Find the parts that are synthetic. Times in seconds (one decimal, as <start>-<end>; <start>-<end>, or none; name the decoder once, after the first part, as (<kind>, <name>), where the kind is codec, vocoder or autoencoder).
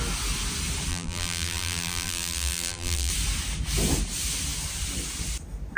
0.9-3.1 (vocoder, BigVGAN v2)